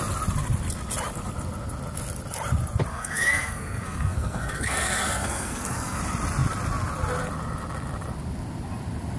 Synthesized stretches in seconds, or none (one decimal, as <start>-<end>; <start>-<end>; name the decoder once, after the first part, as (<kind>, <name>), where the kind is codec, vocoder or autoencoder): 2.9-6.0 (codec, SNAC)